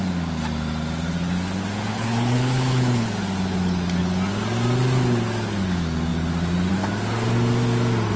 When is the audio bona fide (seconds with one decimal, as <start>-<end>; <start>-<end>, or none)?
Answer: 0.0-1.9; 3.1-8.2